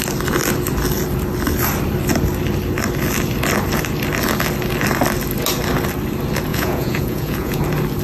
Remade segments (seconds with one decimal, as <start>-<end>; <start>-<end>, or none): 6.5-7.6